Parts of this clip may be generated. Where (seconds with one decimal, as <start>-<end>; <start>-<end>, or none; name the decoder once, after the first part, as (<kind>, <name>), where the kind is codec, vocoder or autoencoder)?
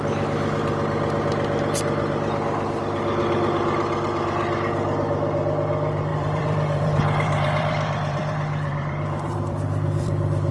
6.1-10.5 (vocoder, BigVGAN v2)